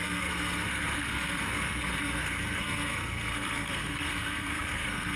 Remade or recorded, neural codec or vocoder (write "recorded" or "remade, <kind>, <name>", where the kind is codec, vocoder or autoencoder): remade, codec, SNAC